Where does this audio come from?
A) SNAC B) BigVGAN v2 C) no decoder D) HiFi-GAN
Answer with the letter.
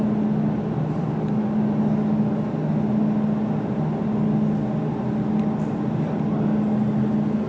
C